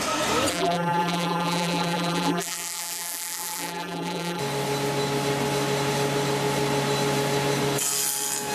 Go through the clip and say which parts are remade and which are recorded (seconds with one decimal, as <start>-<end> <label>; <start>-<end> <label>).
0.0-0.5 recorded; 0.5-4.4 remade; 4.4-8.5 recorded